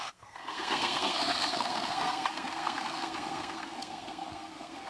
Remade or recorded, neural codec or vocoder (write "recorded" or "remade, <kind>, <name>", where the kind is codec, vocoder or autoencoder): remade, codec, SNAC